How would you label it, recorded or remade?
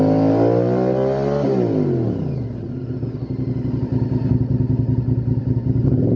recorded